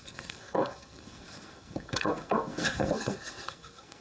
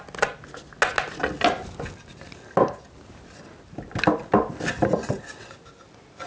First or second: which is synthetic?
first